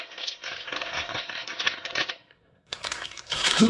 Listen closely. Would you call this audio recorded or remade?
remade